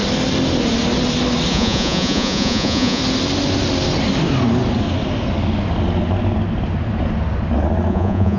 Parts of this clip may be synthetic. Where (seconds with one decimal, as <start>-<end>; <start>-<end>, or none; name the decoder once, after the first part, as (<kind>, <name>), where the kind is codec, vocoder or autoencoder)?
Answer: 1.5-3.0 (vocoder, Vocos); 7.9-8.4